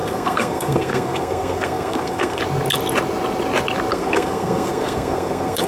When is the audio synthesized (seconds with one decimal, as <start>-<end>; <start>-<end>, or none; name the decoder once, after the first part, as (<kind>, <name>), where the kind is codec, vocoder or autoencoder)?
0.0-2.4 (codec, SNAC); 3.9-5.7